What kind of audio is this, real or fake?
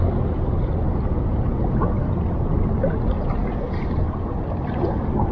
real